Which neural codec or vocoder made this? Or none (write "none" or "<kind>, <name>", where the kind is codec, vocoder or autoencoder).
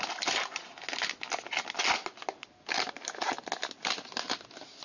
none